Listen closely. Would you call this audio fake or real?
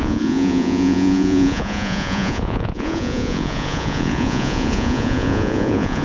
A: fake